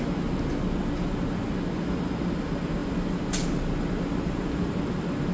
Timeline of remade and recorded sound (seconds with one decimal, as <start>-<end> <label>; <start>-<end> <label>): 0.0-2.8 recorded; 2.8-4.8 remade; 4.8-5.3 recorded